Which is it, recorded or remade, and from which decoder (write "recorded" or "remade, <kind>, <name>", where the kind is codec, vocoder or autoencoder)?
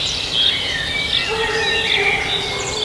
recorded